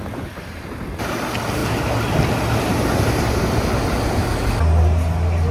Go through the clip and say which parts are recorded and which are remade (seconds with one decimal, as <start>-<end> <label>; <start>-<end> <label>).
0.0-5.5 recorded